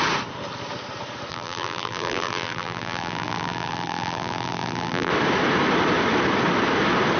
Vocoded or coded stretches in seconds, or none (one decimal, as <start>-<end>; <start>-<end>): 1.3-5.1